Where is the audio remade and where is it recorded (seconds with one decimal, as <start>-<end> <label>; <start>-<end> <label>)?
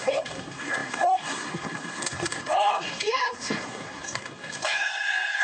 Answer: 0.0-5.4 remade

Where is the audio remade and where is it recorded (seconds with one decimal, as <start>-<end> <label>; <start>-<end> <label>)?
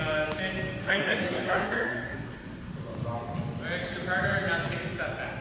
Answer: 0.0-0.8 recorded; 0.8-2.7 remade; 2.7-5.4 recorded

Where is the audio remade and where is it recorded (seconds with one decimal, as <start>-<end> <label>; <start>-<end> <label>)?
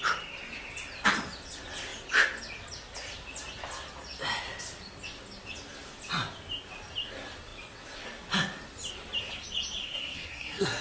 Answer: 0.0-9.8 recorded; 9.8-10.8 remade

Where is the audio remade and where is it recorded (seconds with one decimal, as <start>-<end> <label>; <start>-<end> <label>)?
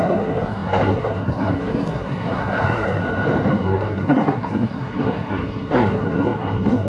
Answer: 0.0-3.0 remade; 3.0-3.5 recorded; 3.5-6.9 remade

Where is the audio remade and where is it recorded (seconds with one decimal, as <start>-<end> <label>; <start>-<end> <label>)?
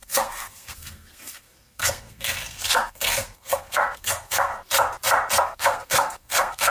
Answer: 0.0-4.5 remade; 4.5-5.4 recorded; 5.4-6.7 remade